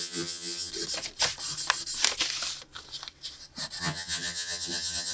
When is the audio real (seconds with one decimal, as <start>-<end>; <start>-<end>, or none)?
0.7-3.8